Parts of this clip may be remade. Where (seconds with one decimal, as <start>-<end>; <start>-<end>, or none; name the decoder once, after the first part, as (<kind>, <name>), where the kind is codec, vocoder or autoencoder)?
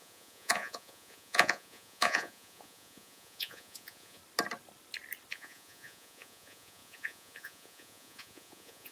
0.0-4.2 (vocoder, Vocos); 5.3-8.9